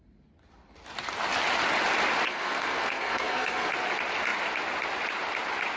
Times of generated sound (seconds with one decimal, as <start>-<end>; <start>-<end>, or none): 2.3-3.7